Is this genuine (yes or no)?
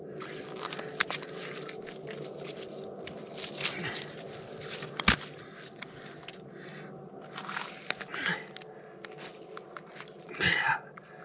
yes